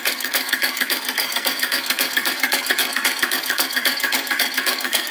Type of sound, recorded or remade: remade